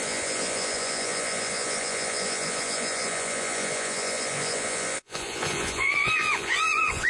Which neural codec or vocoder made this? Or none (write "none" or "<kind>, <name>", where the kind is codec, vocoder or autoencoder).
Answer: vocoder, Vocos